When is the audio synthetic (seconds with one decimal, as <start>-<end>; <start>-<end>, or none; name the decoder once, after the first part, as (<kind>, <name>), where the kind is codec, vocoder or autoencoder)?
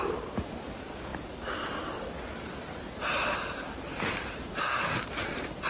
none